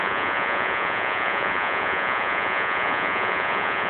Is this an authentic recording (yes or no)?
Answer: no